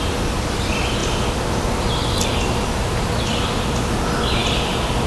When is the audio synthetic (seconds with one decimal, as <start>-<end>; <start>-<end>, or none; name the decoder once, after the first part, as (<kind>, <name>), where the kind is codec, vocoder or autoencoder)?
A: none